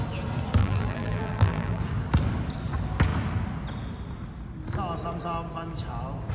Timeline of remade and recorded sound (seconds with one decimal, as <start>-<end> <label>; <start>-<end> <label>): 0.0-0.6 recorded; 0.6-1.8 remade; 1.8-6.3 recorded